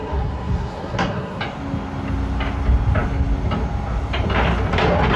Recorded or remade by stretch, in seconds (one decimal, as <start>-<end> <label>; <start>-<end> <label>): 0.0-1.4 remade; 1.4-5.2 recorded